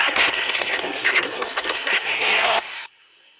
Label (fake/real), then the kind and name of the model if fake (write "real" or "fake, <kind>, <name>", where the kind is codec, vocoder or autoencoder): fake, codec, SNAC